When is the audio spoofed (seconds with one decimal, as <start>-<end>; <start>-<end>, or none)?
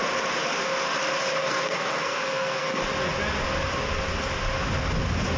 1.4-2.8